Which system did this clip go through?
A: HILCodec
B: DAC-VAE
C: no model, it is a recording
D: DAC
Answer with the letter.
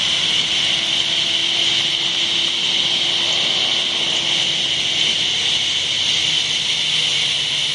C